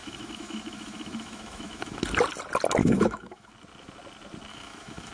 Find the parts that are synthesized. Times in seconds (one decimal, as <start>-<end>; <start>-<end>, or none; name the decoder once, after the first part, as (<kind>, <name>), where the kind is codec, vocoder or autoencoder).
0.0-2.0 (autoencoder, DAC-VAE); 2.8-3.5; 4.5-5.1